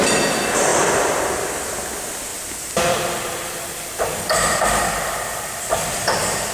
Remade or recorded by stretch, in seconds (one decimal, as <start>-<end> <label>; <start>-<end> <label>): 0.0-0.7 recorded; 0.7-1.2 remade; 1.2-2.3 recorded; 2.3-6.5 remade